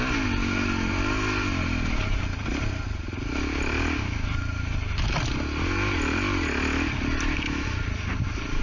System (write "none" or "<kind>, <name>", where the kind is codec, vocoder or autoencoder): none